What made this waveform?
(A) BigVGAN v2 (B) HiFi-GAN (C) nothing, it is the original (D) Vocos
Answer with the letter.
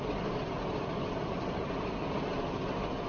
C